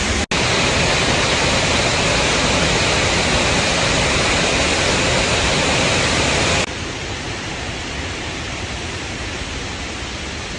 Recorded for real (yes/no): yes